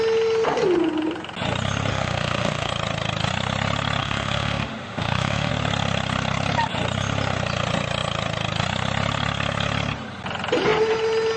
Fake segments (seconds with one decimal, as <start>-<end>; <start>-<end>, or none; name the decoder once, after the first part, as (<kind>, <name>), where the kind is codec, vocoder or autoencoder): 1.9-2.7 (autoencoder, DAC-VAE); 4.0-5.5